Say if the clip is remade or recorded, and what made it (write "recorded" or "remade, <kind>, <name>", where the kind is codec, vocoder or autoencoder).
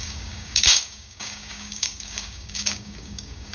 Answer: remade, codec, DAC